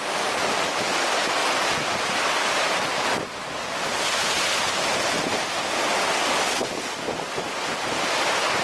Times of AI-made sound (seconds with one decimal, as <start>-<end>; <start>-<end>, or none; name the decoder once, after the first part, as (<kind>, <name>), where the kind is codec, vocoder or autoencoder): none